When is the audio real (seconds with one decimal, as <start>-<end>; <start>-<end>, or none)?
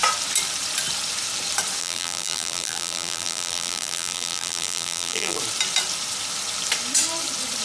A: 0.0-1.8; 5.4-7.6